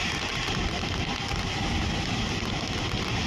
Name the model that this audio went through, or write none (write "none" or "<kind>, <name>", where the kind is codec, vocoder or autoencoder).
none